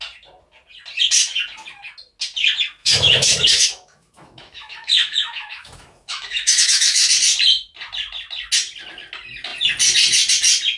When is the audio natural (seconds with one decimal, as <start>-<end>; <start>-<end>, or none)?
0.0-2.8; 7.1-10.8